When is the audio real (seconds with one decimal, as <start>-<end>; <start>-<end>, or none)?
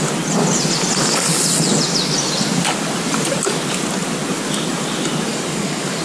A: 0.0-5.3